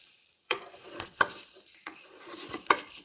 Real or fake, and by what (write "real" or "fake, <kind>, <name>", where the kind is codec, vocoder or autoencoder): fake, vocoder, Vocos